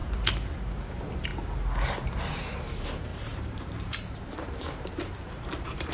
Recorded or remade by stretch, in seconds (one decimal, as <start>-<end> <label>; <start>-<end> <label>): 0.0-0.8 recorded; 0.8-1.3 remade; 1.3-2.3 recorded; 2.3-5.9 remade